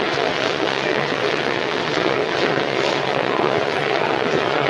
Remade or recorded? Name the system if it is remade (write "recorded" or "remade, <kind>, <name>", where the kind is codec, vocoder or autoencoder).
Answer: remade, vocoder, WaveNeXt